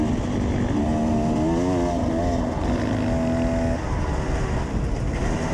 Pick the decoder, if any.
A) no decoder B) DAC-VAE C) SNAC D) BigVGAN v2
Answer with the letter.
A